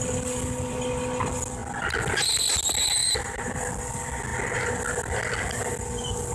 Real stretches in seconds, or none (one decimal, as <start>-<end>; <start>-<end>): 0.0-3.0; 3.6-6.3